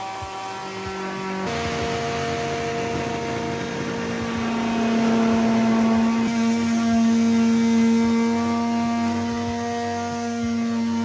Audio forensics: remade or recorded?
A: recorded